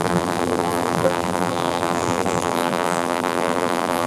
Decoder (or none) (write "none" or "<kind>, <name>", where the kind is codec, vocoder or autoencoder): vocoder, BigVGAN v2